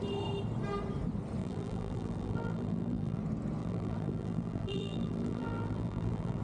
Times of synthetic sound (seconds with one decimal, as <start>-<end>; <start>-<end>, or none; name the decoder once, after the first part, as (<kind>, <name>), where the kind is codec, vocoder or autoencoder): 1.4-3.2 (vocoder, BigVGAN v2); 3.6-6.4